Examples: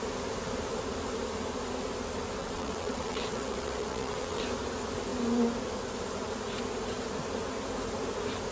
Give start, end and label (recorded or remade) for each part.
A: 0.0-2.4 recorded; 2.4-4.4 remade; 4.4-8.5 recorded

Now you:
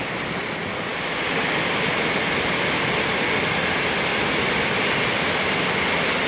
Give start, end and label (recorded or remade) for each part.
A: 0.0-4.1 recorded; 4.1-6.3 remade

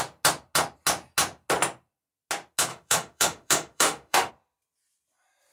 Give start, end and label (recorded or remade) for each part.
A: 0.0-2.7 recorded; 2.7-4.3 remade; 4.3-5.5 recorded

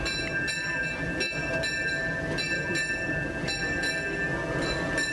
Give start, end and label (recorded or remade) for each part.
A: 0.0-5.1 recorded

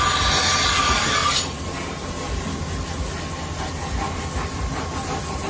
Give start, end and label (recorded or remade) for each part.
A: 0.0-5.5 recorded